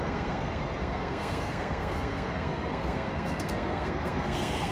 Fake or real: fake